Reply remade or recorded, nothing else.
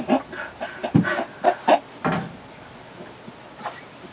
recorded